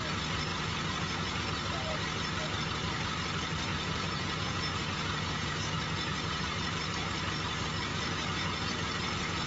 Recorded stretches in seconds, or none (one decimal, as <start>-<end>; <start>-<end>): 0.0-0.5; 1.4-3.7; 6.4-7.9